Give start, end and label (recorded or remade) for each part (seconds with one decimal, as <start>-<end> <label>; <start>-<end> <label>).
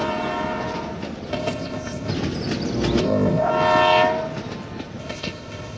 0.0-1.3 recorded; 1.3-2.1 remade; 2.1-3.0 recorded; 3.0-3.5 remade; 3.5-5.0 recorded; 5.0-5.8 remade